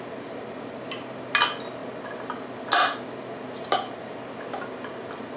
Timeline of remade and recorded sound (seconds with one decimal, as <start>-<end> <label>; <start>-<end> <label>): 0.0-5.4 recorded